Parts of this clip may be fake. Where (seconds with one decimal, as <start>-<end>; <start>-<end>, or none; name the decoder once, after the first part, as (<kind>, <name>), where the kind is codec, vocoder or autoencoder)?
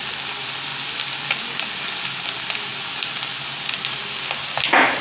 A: none